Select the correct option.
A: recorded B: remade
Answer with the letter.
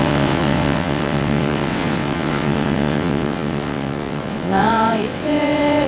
B